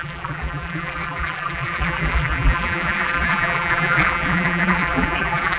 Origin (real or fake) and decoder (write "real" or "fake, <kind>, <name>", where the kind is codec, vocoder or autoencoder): fake, vocoder, BigVGAN v2